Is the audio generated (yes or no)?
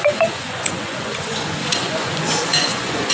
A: yes